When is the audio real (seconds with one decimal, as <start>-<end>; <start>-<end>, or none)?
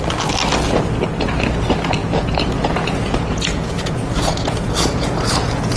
0.0-2.0